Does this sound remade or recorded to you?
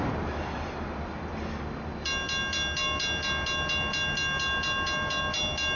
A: recorded